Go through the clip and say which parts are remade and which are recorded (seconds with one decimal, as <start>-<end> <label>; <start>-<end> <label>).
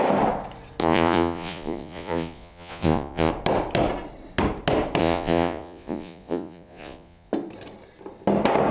0.0-0.8 recorded; 0.8-3.3 remade; 3.3-5.0 recorded; 5.0-7.3 remade; 7.3-8.7 recorded